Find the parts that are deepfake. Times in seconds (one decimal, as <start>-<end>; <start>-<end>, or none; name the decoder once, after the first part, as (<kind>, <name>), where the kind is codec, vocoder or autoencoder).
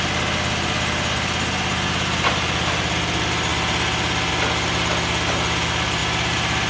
none